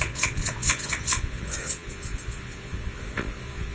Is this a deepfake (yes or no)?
yes